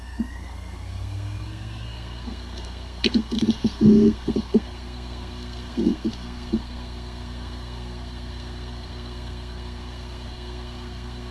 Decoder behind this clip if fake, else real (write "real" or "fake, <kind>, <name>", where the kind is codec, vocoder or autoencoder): fake, codec, SNAC